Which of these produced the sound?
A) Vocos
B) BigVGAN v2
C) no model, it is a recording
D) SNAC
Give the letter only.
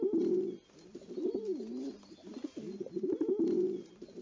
C